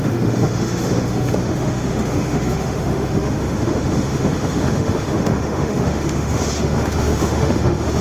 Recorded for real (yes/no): no